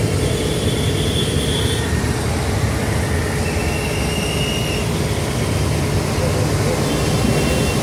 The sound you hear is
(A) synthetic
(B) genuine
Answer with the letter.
B